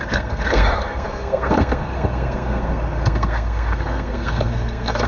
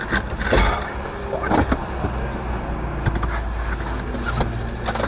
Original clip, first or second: second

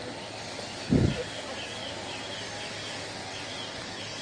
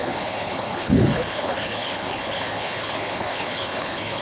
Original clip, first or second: first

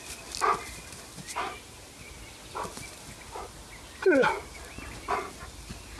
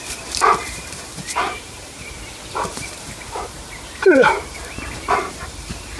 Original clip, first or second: first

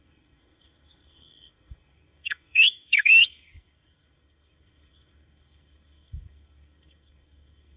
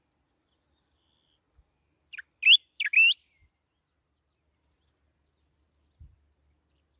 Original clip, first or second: second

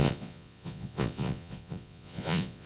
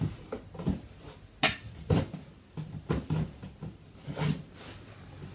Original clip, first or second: second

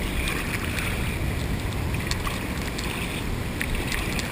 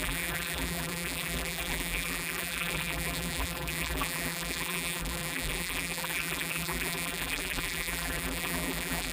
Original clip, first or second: first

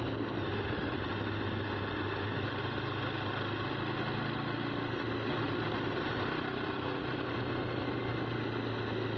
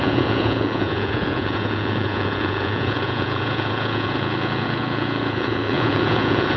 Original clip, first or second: first